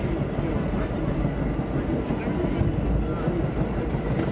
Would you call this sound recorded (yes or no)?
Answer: yes